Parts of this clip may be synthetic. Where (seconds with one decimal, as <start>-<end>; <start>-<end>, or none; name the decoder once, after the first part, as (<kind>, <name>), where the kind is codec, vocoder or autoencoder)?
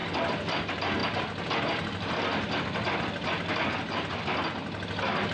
none